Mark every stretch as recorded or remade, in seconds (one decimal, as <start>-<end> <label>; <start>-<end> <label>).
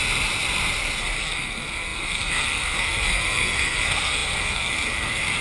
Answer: 0.0-1.2 recorded; 1.2-5.4 remade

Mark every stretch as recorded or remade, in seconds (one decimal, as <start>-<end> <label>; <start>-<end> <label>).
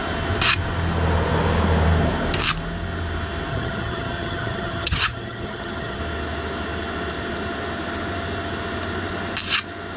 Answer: 0.0-3.5 recorded; 3.5-6.0 remade; 6.0-10.0 recorded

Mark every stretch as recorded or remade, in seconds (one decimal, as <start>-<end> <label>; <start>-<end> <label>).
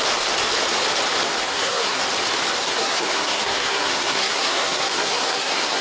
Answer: 0.0-1.5 recorded; 1.5-2.0 remade; 2.0-2.6 recorded; 2.6-5.8 remade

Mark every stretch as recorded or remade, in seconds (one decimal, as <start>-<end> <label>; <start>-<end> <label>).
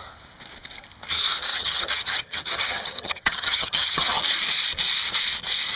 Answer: 0.0-1.5 recorded; 1.5-4.2 remade; 4.2-5.8 recorded